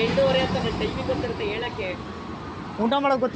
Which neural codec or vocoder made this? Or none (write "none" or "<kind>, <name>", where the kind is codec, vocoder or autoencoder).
none